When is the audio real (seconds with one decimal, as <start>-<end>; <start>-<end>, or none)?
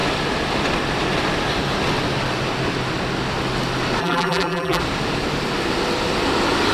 0.0-4.0; 4.8-6.7